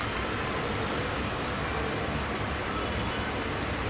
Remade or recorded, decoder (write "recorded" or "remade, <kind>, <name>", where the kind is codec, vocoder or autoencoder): recorded